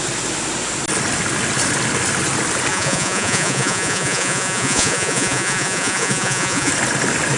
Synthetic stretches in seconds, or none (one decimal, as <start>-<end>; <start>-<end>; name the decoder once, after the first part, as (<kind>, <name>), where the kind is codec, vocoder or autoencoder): 2.7-6.7 (vocoder, Vocos)